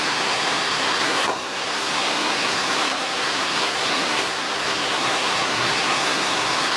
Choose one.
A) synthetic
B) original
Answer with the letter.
A